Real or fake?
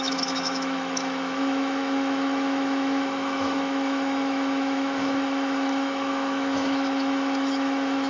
fake